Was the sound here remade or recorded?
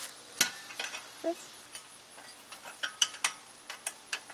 recorded